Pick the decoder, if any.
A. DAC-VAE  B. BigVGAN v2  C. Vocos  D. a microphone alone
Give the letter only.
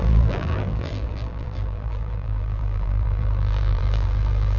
B